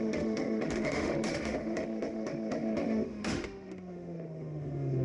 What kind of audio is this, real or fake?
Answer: fake